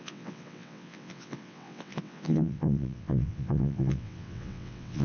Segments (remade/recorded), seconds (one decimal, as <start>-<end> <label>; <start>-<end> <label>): 0.0-5.0 remade